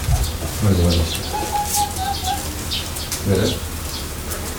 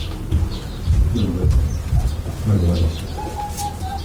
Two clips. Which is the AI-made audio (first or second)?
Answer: second